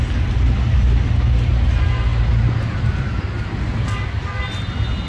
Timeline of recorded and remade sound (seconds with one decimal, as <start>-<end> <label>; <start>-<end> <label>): 0.0-5.1 recorded